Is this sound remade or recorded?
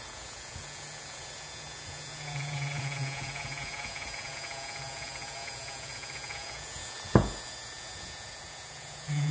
remade